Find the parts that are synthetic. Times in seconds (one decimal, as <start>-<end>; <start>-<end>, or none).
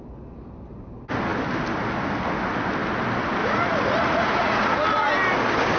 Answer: 3.4-5.1